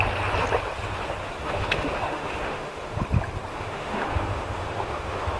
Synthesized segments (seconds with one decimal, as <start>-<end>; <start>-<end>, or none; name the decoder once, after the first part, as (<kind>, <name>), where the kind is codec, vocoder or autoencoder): 1.2-3.0 (autoencoder, DAC-VAE); 3.5-5.4